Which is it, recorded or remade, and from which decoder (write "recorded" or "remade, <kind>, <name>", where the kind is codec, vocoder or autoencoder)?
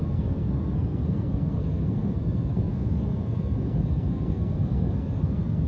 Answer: remade, codec, SNAC